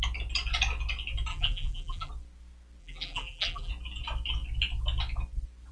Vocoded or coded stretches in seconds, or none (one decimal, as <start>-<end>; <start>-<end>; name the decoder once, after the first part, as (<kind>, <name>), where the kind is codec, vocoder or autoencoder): 1.3-2.1 (vocoder, BigVGAN v2); 2.8-3.7